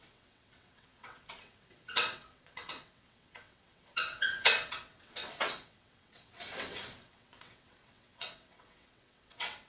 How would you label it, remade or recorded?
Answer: remade